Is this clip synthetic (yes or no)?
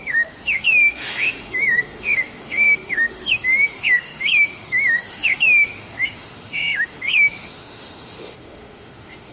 yes